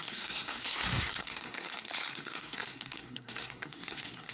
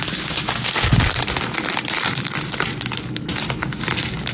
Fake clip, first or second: first